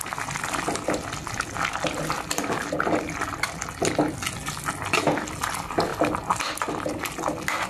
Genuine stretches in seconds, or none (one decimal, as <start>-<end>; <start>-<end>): 0.0-7.7